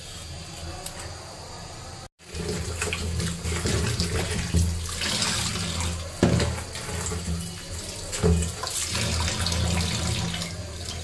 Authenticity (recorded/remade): recorded